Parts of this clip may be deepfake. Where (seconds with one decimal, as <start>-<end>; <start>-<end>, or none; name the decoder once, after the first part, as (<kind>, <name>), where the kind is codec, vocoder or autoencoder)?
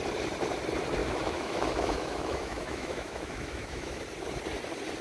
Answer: 1.0-4.0 (autoencoder, DAC-VAE)